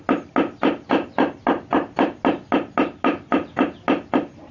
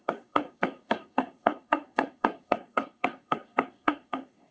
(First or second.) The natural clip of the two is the first